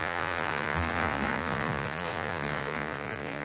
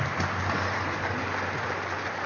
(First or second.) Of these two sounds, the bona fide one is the second